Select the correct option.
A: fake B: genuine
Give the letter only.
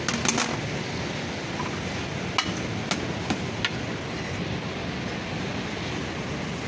B